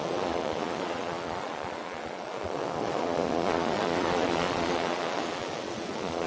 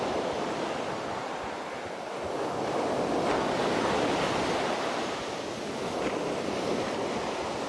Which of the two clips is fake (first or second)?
first